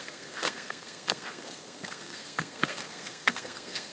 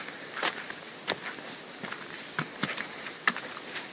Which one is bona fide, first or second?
second